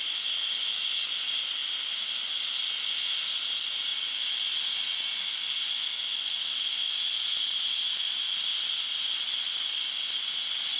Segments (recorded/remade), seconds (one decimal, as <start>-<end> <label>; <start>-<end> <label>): 0.0-5.2 recorded; 5.2-6.9 remade; 6.9-10.8 recorded